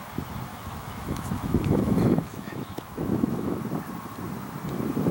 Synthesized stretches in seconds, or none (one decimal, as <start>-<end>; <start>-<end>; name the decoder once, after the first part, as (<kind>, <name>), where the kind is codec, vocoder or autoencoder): 0.5-3.6 (autoencoder, DAC-VAE)